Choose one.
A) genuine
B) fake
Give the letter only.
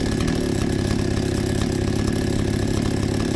A